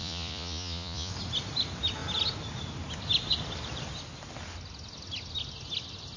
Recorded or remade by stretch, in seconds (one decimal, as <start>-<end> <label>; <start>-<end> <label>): 0.0-1.1 remade; 1.1-6.2 recorded